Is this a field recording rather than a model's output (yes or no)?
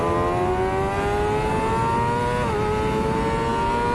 yes